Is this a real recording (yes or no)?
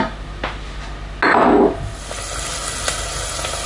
yes